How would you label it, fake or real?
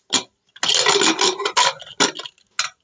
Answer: real